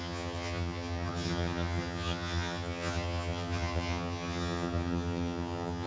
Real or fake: fake